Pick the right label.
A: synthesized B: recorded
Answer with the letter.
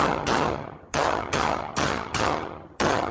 A